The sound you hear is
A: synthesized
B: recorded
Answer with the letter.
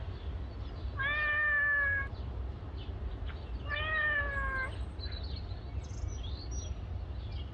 B